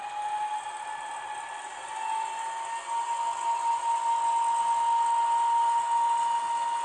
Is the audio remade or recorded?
recorded